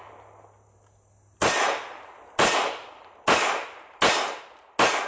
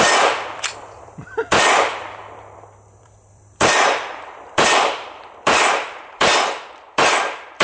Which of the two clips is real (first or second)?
first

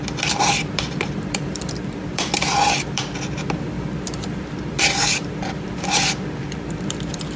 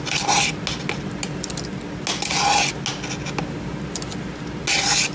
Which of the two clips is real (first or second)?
second